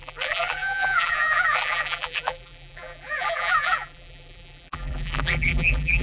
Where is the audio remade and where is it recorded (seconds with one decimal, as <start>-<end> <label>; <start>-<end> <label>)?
0.0-6.0 remade